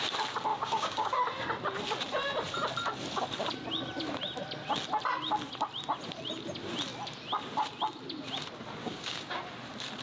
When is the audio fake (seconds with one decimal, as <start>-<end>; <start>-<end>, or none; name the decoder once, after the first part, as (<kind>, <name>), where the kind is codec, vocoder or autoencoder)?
0.5-1.2 (codec, DAC); 8.8-9.4